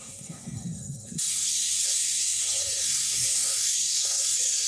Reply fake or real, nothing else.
fake